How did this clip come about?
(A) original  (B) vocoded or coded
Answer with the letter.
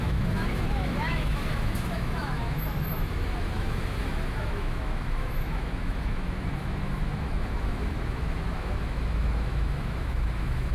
B